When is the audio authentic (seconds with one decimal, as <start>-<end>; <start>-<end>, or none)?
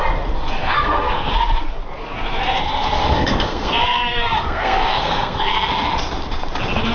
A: 0.0-0.6; 1.3-3.0; 5.4-6.9